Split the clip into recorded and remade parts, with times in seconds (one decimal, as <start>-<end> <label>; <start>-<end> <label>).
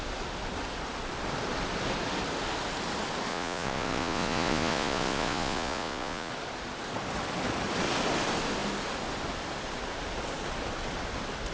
0.0-3.3 recorded; 3.3-6.3 remade; 6.3-11.5 recorded